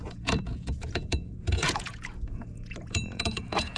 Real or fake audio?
fake